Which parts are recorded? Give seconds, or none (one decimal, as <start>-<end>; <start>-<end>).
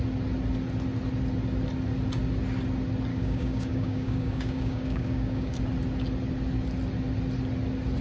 0.0-3.1; 5.6-8.0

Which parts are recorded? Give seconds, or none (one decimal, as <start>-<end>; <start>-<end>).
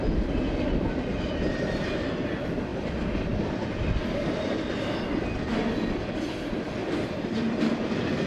0.0-2.7; 3.4-6.8; 7.6-8.3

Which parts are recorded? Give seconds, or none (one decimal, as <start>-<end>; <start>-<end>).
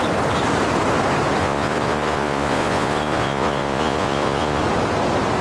0.0-1.4; 4.6-5.4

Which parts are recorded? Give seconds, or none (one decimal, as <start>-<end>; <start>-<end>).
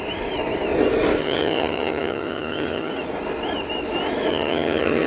0.0-1.2; 2.9-4.3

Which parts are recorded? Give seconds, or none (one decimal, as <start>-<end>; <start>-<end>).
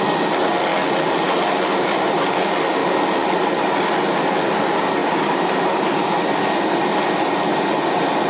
0.0-1.7; 2.3-5.0; 6.2-8.3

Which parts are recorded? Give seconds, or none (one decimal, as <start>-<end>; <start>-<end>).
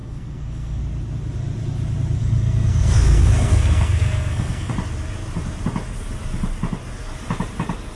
0.8-2.2; 4.7-8.0